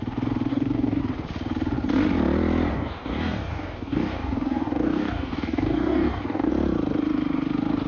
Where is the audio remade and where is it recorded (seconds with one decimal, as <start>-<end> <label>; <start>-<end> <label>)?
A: 0.0-0.5 recorded; 0.5-1.0 remade; 1.0-2.7 recorded; 2.7-6.5 remade; 6.5-7.9 recorded